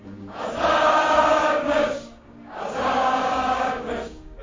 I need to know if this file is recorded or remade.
remade